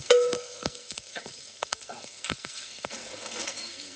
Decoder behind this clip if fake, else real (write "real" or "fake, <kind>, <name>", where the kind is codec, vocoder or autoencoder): fake, codec, SNAC